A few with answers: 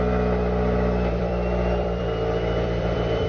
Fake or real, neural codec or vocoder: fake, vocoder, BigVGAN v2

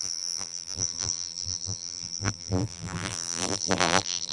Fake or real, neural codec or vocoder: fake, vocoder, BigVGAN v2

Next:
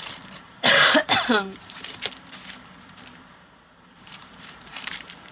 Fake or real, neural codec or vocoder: fake, vocoder, BigVGAN v2